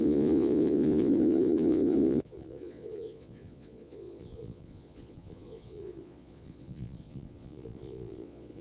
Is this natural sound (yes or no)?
no